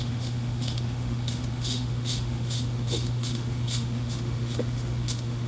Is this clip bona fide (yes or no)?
no